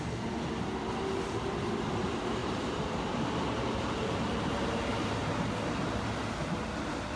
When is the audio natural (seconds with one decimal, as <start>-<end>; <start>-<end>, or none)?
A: 0.0-2.4; 6.5-7.2

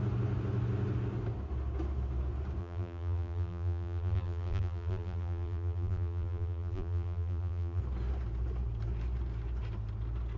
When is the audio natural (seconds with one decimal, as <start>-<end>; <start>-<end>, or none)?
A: 0.0-2.6; 7.8-10.4

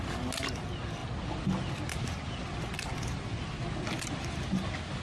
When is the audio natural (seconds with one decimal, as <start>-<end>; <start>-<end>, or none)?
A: 0.0-5.0

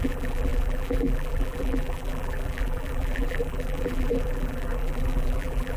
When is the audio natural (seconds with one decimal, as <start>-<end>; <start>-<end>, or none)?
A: none

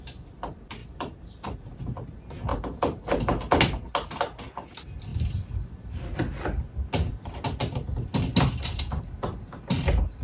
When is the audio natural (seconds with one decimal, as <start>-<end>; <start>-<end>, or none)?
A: 0.0-0.8; 1.7-10.2